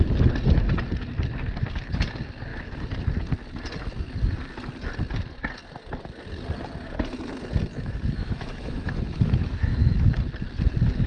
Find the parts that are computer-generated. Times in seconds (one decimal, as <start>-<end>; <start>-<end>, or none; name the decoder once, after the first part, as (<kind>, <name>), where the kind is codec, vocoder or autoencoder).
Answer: 7.7-10.2 (autoencoder, DAC-VAE)